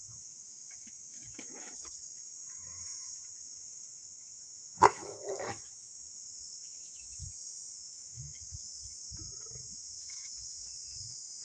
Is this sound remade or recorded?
remade